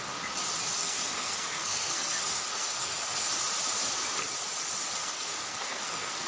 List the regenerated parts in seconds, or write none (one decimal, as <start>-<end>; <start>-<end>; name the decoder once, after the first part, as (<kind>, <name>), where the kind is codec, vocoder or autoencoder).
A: 0.8-3.3 (codec, SNAC); 5.0-6.3

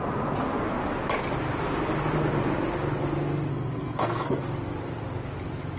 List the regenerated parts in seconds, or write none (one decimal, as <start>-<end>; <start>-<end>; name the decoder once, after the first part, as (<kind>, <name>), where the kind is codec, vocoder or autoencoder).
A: 3.5-4.4 (codec, SNAC)

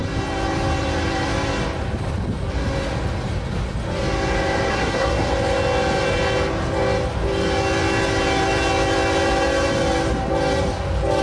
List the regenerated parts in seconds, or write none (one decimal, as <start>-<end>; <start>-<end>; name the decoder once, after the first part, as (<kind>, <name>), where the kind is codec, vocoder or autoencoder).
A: 4.7-5.3 (codec, SNAC)

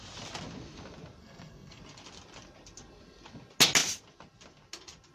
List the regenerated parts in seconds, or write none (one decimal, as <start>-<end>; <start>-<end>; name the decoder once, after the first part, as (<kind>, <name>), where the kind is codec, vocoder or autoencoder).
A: 1.2-1.8 (codec, SNAC)

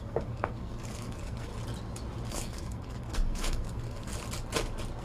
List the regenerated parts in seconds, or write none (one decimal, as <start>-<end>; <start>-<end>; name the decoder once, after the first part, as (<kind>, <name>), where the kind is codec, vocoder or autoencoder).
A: 0.0-1.5 (codec, SNAC); 2.3-4.1